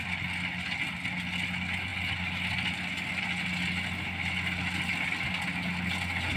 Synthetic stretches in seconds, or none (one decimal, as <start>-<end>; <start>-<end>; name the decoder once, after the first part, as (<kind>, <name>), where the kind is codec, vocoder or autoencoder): none